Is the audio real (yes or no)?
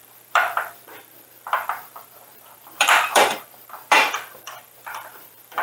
no